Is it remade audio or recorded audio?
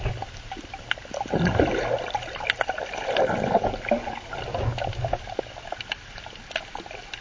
recorded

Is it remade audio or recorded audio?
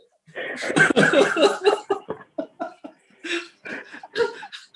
recorded